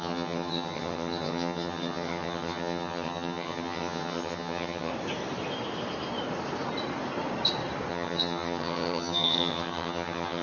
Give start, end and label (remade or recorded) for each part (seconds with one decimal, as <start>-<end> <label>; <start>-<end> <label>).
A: 0.0-4.9 remade; 4.9-7.9 recorded; 7.9-10.4 remade